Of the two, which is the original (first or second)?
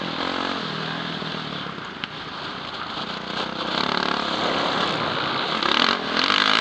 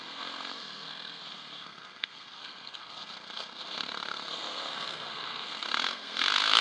first